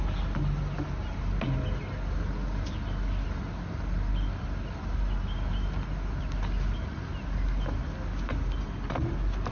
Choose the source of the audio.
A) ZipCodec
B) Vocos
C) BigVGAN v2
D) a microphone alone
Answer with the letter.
D